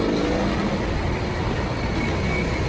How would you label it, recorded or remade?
recorded